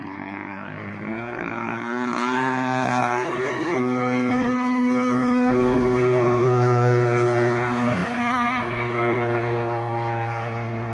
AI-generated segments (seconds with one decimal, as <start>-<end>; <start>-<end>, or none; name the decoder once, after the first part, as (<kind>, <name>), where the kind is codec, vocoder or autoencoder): 0.0-10.9 (codec, SNAC)